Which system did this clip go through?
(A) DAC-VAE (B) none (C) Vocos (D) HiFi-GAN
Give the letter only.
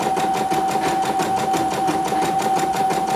B